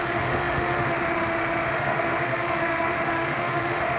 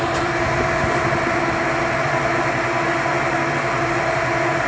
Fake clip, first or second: first